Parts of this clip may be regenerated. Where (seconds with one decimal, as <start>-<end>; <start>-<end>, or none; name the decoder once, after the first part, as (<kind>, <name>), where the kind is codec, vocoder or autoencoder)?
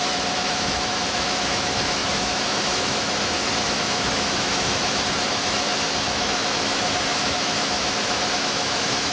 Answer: 0.0-9.1 (autoencoder, DAC-VAE)